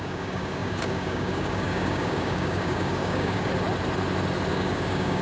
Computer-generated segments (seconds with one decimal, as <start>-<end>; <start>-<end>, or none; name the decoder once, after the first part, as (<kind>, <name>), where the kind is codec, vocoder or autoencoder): 0.0-3.5 (codec, DAC); 4.5-5.2